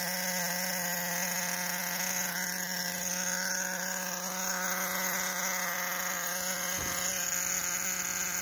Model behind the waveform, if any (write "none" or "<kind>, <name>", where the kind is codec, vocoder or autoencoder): none